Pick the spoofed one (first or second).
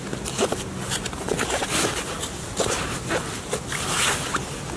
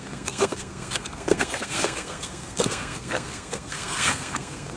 second